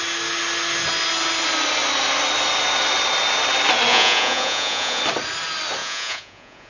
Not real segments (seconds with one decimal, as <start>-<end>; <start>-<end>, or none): 3.9-5.0; 5.8-6.7